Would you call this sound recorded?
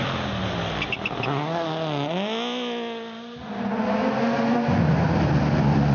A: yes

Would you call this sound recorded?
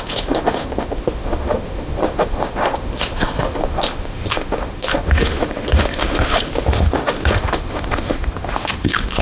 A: no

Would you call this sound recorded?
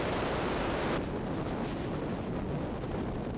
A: yes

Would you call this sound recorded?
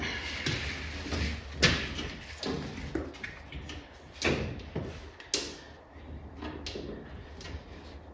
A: yes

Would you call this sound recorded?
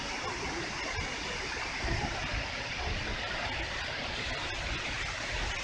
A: yes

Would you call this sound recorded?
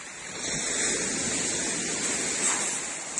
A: yes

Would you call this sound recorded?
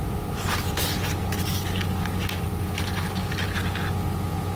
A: yes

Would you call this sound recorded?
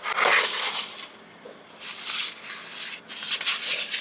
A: yes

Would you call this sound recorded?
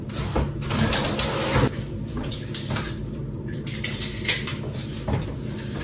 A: no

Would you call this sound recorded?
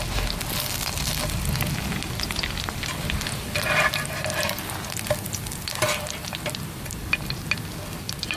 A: yes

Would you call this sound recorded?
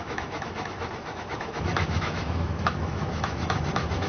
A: no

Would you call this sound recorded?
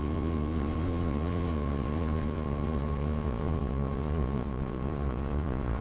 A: no